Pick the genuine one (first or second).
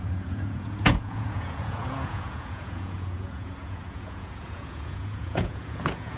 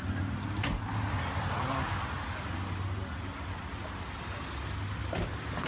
second